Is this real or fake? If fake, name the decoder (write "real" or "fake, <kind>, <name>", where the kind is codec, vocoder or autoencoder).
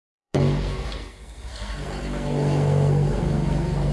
fake, codec, SNAC